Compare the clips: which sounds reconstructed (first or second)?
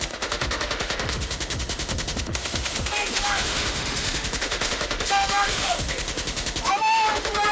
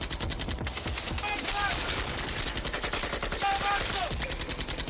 first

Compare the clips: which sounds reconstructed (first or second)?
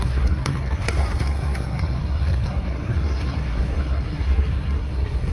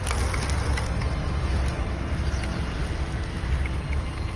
first